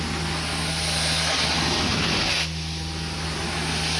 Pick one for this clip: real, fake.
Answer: real